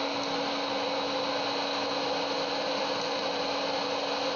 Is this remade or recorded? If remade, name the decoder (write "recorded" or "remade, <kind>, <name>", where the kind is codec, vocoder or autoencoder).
recorded